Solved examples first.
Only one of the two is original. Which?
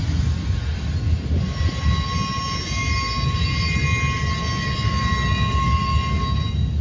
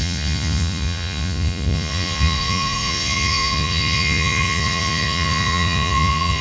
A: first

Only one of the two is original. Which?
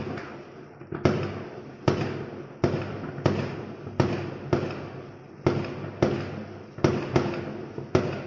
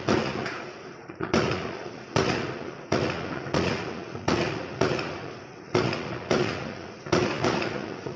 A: first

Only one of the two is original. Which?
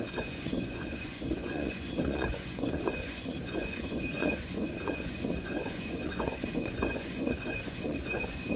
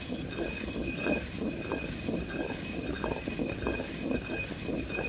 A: second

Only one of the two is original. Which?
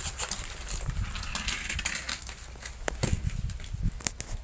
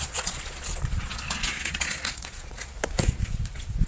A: first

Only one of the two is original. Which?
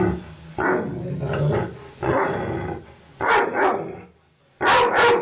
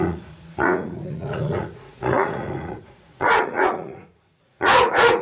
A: first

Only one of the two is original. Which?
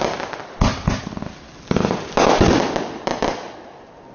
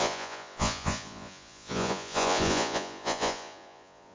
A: first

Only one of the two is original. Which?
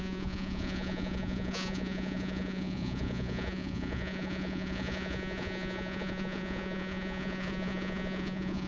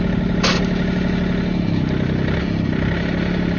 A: second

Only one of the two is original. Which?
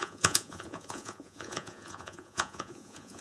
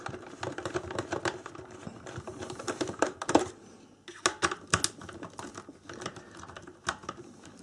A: second